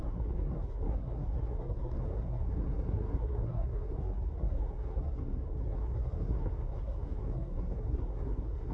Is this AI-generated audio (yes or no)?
yes